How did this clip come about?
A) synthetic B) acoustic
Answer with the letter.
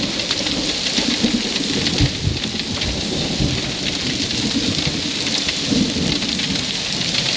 B